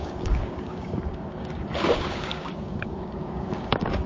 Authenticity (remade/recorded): remade